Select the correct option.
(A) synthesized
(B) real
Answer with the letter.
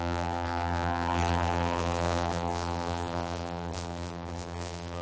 A